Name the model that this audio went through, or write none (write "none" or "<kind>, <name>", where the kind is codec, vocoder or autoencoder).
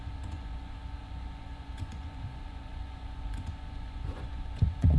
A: vocoder, Vocos